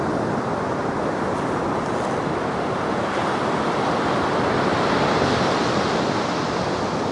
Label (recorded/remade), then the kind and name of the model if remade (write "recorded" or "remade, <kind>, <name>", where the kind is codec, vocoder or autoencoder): recorded